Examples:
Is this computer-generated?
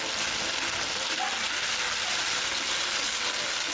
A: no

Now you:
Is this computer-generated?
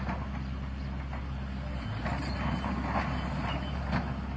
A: no